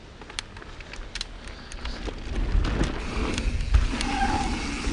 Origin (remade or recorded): recorded